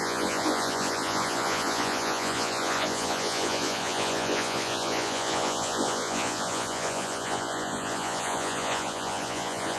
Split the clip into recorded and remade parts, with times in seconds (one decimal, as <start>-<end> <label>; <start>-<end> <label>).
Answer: 0.0-9.8 remade

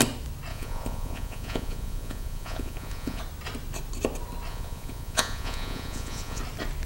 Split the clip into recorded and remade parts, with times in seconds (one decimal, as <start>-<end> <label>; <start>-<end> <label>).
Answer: 0.0-0.5 recorded; 0.5-3.2 remade; 3.2-4.5 recorded; 4.5-6.4 remade; 6.4-6.9 recorded

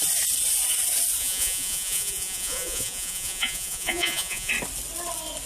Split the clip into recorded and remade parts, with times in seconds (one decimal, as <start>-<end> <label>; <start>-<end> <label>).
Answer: 0.0-1.2 recorded; 1.2-4.5 remade; 4.5-5.5 recorded

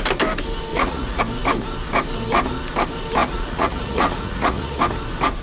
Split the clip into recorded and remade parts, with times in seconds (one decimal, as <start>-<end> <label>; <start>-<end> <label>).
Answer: 0.0-0.7 recorded; 0.7-1.2 remade; 1.2-3.2 recorded; 3.2-4.8 remade; 4.8-5.4 recorded